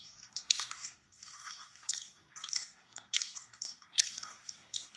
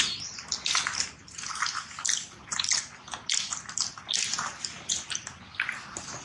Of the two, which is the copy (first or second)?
first